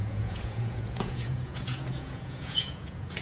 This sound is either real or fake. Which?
fake